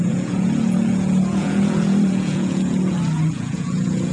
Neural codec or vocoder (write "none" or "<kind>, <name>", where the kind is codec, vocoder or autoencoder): vocoder, Vocos